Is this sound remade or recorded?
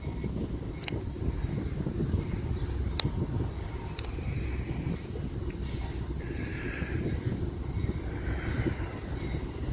recorded